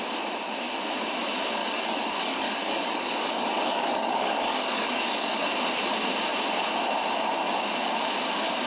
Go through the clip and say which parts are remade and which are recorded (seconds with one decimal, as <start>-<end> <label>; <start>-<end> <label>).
0.0-1.6 recorded; 1.6-5.5 remade; 5.5-8.7 recorded